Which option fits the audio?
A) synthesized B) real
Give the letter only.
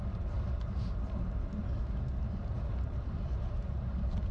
A